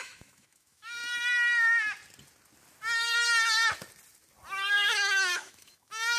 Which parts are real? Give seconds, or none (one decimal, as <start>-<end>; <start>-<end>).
1.0-4.7